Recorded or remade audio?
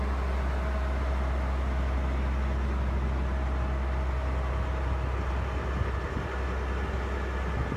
recorded